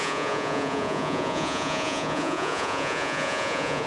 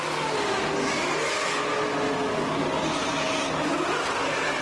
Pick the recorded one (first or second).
second